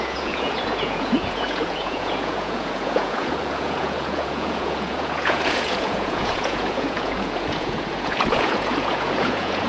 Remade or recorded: remade